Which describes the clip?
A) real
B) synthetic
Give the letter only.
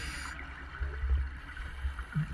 A